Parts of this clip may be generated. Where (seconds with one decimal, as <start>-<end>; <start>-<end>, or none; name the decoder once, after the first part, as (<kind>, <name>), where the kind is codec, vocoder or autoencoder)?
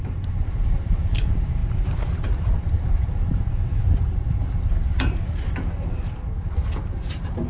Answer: 0.0-3.7 (vocoder, BigVGAN v2); 4.7-7.5